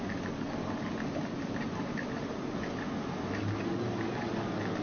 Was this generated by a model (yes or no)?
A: no